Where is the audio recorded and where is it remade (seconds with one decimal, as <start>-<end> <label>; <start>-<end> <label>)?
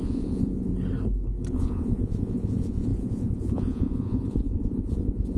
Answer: 0.0-0.7 remade; 0.7-1.5 recorded; 1.5-5.4 remade